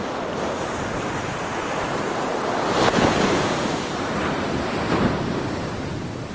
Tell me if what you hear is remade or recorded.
recorded